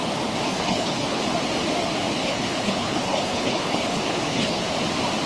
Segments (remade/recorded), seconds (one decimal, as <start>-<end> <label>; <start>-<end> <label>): 0.0-0.5 recorded; 0.5-1.2 remade; 1.2-2.2 recorded; 2.2-4.7 remade; 4.7-5.3 recorded